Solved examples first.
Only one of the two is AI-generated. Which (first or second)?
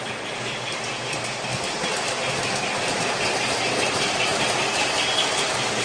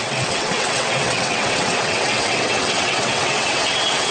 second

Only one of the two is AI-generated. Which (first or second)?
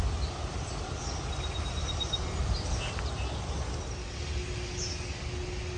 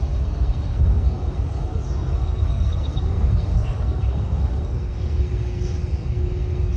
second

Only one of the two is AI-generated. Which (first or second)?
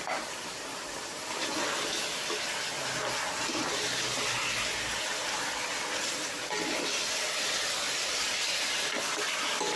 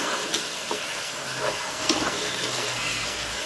second